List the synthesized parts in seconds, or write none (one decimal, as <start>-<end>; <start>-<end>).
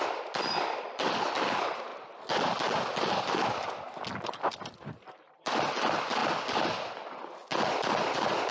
0.0-1.9; 4.1-6.2; 7.7-8.5